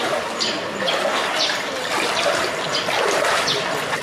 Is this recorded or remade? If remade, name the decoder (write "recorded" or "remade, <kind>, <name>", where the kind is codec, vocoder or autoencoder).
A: recorded